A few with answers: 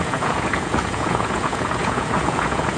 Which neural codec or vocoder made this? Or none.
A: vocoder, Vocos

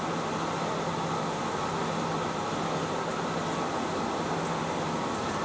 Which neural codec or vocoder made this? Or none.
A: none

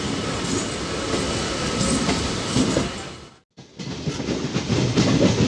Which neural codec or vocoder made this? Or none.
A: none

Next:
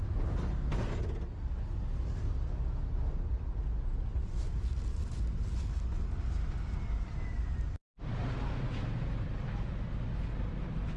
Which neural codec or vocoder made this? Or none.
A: none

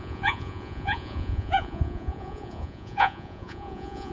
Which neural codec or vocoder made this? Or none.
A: vocoder, Vocos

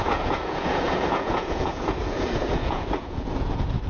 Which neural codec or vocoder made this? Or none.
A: vocoder, Vocos